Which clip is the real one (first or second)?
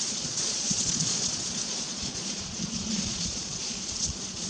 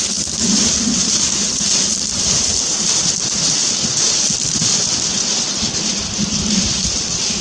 second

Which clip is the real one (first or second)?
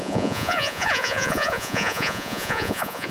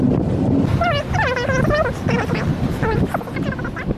second